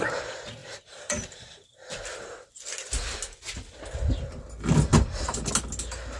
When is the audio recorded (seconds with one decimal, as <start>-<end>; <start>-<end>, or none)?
0.0-0.6; 2.5-4.9; 5.5-6.2